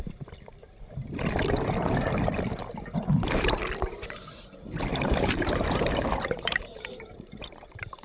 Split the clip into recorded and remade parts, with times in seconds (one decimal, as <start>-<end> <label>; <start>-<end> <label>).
0.0-4.9 recorded; 4.9-8.0 remade